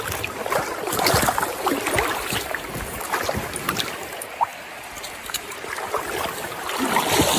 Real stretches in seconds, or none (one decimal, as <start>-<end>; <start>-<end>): 0.0-7.4